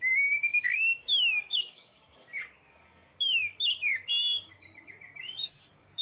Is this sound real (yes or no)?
no